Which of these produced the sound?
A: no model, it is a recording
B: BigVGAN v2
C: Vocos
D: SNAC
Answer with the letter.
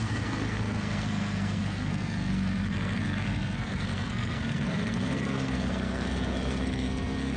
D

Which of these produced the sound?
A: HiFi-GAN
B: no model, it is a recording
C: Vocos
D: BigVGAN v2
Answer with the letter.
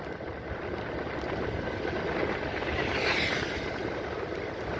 B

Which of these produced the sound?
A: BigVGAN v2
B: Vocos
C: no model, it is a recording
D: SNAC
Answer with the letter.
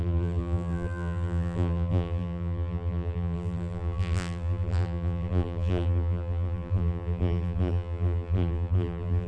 A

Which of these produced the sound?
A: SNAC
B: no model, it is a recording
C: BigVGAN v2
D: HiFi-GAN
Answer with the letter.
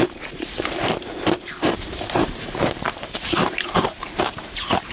C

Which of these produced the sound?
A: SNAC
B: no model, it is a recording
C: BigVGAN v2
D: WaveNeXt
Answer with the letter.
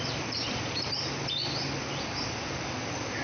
C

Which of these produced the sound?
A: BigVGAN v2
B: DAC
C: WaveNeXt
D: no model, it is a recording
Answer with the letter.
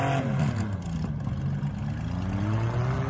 D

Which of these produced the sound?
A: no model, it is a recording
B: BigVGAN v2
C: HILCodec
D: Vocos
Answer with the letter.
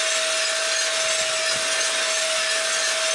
A